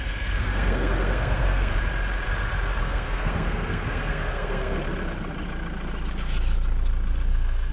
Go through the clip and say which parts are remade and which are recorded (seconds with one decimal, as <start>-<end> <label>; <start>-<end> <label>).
0.0-1.7 remade; 1.7-2.8 recorded; 2.8-4.8 remade; 4.8-7.3 recorded; 7.3-7.7 remade